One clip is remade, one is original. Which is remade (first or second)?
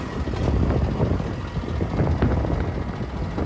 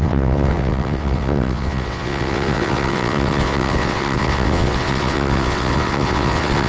second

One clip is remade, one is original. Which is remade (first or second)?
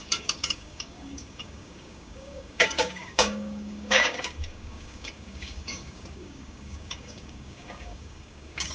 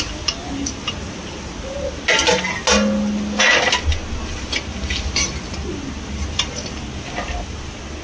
first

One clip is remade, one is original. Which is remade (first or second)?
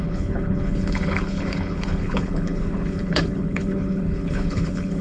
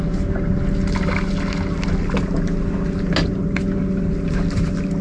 first